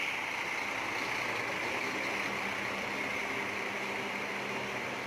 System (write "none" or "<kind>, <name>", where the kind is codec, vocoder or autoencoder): none